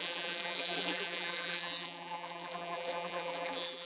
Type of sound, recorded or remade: remade